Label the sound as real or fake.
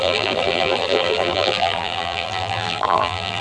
fake